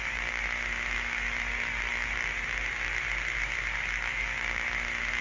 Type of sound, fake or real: real